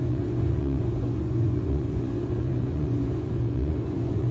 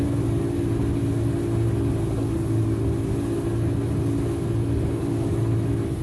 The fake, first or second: first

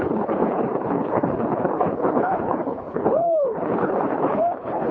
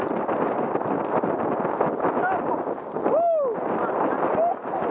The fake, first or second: first